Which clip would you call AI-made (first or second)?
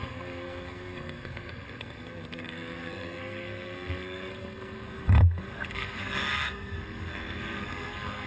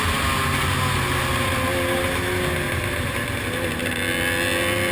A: first